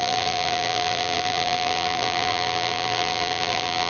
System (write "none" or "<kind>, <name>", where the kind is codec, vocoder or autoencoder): vocoder, BigVGAN v2